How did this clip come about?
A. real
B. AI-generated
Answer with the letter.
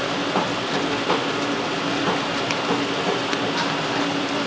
A